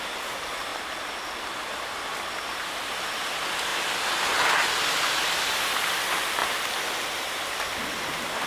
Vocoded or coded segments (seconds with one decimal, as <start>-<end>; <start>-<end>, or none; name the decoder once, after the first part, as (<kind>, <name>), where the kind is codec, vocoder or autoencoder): 6.4-8.5 (vocoder, BigVGAN v2)